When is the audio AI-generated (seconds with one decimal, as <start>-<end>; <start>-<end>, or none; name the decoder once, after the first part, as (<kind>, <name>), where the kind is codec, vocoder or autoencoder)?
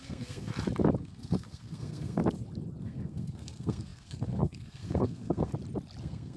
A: 0.0-0.5 (codec, SNAC); 1.0-2.2; 2.8-5.5; 6.0-6.4